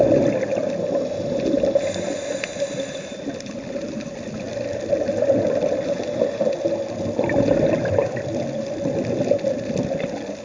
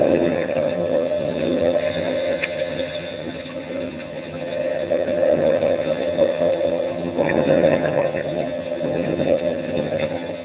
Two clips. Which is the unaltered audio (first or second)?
first